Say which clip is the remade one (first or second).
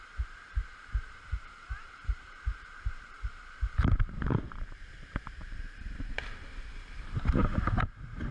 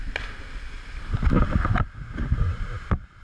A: first